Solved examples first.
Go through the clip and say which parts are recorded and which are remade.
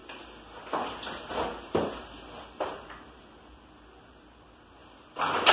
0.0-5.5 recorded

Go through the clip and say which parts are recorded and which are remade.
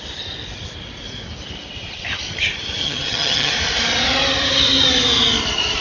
0.0-2.8 recorded; 2.8-3.5 remade; 3.5-5.8 recorded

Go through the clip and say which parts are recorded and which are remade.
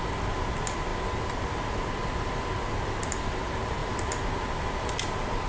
0.0-5.5 recorded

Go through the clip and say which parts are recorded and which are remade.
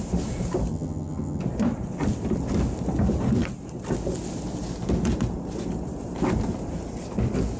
0.0-0.7 recorded; 0.7-1.4 remade; 1.4-7.6 recorded